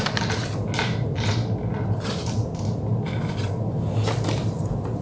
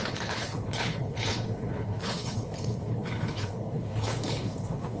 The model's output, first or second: second